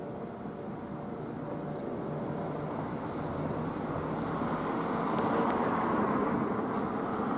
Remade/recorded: recorded